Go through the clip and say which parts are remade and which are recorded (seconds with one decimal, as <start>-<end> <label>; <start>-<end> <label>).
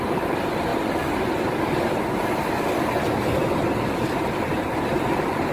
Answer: 0.0-5.5 recorded